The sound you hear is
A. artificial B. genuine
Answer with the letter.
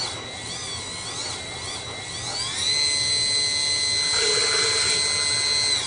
B